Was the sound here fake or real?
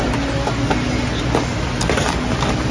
real